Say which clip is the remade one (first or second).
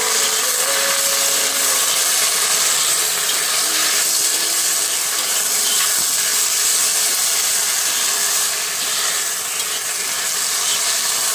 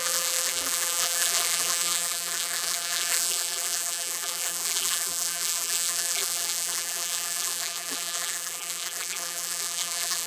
second